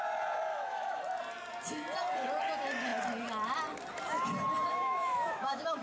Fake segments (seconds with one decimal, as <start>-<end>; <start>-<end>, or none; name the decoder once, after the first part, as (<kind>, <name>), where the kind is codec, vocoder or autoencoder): 0.5-1.0 (autoencoder, DAC-VAE); 4.7-5.8